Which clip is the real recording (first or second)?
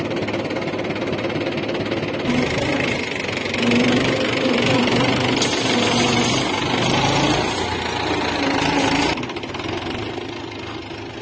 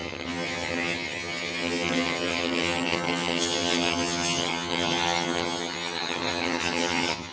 first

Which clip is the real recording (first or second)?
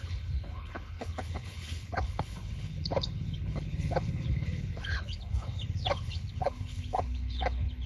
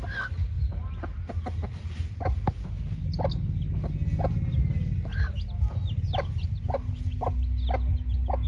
second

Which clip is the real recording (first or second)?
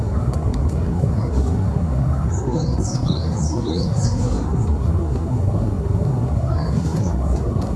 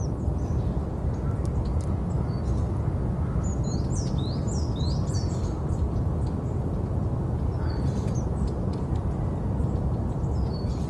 second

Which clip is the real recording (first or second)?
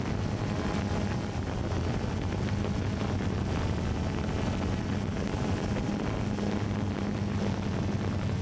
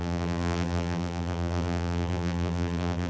first